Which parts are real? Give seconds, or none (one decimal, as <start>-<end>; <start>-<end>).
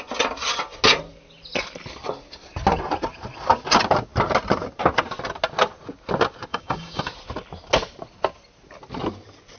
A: 0.0-6.5; 7.0-9.6